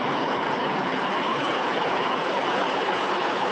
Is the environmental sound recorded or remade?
remade